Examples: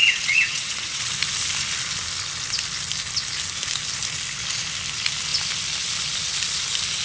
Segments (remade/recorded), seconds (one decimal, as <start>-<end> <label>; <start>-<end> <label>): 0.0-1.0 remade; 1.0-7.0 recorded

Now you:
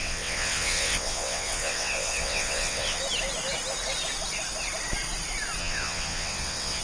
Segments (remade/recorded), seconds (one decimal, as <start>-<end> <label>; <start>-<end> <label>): 0.0-3.0 remade; 3.0-5.6 recorded; 5.6-6.8 remade

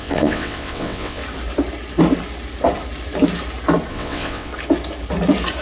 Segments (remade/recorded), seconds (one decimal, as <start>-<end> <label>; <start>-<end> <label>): 0.0-1.2 remade; 1.2-3.9 recorded; 3.9-4.5 remade; 4.5-5.6 recorded

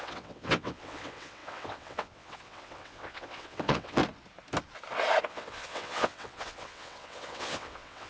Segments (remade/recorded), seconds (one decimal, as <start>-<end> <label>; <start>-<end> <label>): 0.0-4.0 remade; 4.0-5.2 recorded; 5.2-8.1 remade

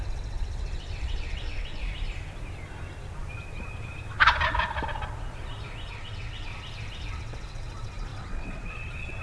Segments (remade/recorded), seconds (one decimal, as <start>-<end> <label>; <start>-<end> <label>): 0.0-1.8 remade; 1.8-5.9 recorded; 5.9-6.5 remade; 6.5-7.1 recorded; 7.1-9.2 remade